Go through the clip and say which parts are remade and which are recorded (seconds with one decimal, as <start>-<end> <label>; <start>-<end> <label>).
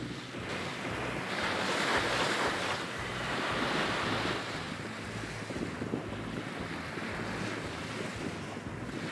0.0-1.9 recorded; 1.9-4.7 remade; 4.7-9.1 recorded